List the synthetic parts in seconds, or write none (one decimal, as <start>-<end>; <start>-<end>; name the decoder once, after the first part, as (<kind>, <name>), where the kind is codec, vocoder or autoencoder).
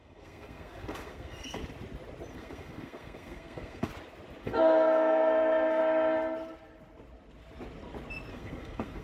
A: 0.0-1.6 (codec, SNAC); 2.3-3.9; 4.4-5.8; 8.3-9.0